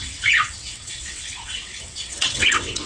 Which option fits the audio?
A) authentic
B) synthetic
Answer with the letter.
B